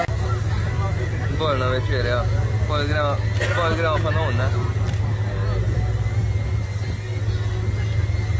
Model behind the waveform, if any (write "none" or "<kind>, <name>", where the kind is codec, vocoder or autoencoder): none